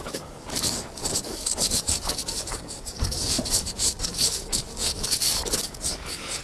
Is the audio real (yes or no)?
no